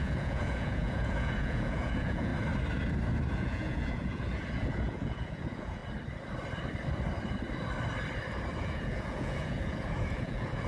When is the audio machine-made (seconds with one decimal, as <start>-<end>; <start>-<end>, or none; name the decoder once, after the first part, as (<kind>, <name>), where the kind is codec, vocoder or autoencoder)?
0.0-2.3 (vocoder, Vocos); 3.3-5.8; 8.6-10.7